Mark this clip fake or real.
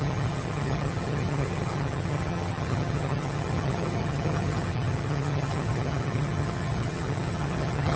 fake